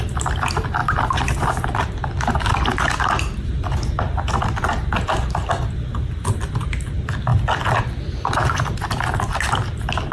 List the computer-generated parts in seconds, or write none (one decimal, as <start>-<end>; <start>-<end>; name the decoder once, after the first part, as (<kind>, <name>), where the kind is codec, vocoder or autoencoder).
none